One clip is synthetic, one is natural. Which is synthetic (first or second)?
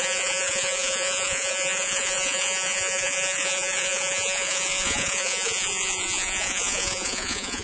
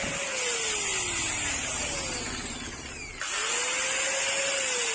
first